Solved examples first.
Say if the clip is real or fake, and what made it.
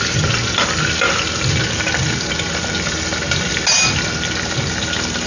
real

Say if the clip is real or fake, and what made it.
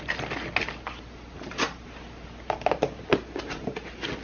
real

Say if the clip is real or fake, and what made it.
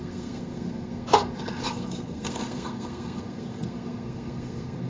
fake, codec, SNAC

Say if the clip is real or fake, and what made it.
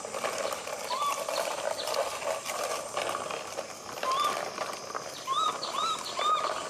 real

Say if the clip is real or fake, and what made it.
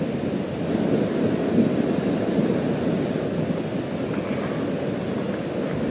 real